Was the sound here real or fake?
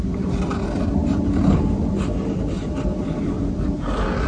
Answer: real